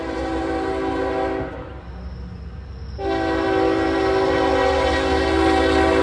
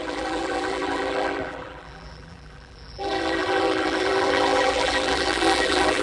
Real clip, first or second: first